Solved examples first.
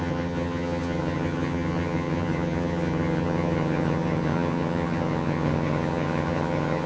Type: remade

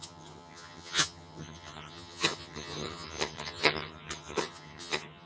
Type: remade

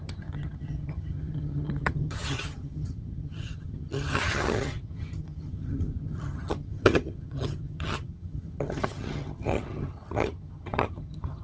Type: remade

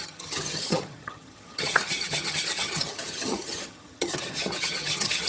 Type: remade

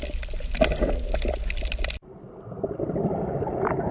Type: recorded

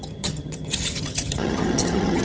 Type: remade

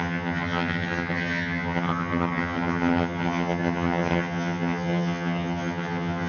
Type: remade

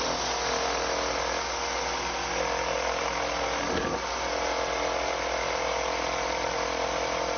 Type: recorded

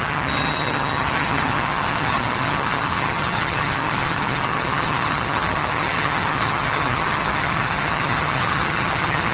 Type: remade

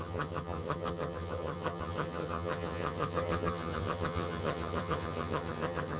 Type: remade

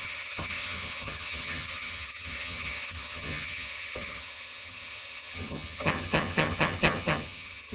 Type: remade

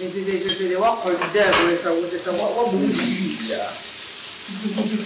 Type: recorded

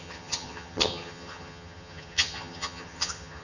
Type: remade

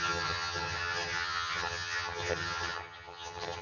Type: remade